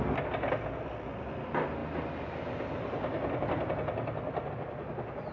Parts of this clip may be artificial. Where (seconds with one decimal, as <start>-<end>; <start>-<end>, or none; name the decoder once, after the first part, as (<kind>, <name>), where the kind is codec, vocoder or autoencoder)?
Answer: none